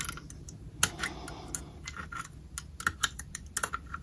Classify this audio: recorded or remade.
recorded